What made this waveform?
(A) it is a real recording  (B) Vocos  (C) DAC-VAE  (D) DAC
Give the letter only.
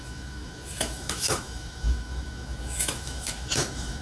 C